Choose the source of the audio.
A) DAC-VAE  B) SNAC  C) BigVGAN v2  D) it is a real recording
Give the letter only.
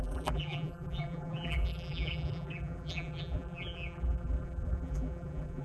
C